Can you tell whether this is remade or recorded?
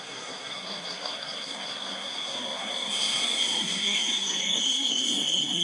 remade